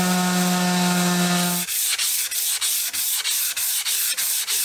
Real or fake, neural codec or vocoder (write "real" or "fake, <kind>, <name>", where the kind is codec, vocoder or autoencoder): real